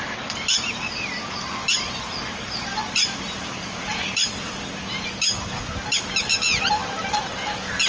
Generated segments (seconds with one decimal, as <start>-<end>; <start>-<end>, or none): 2.7-4.6; 6.8-7.9